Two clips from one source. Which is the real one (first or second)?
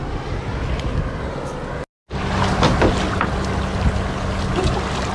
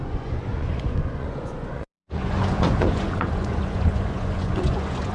first